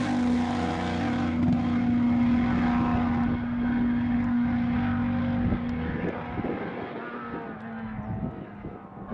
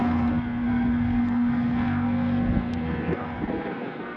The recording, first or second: first